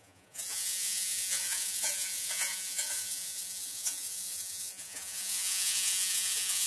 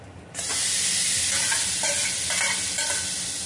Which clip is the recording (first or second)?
second